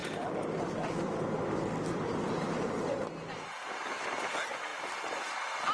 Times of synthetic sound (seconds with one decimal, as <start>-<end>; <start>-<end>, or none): 2.2-3.1